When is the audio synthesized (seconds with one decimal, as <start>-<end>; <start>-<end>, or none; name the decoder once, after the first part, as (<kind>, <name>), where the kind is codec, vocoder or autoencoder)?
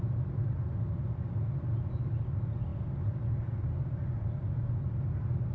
none